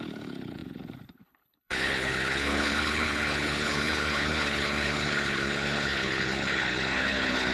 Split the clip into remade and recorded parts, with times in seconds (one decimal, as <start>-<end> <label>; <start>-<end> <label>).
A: 0.0-7.5 remade